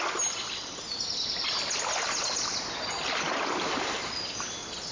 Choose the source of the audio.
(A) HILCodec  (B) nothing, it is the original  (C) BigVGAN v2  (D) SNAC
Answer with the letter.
B